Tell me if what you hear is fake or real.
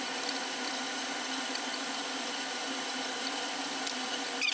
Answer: real